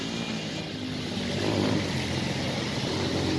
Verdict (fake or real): real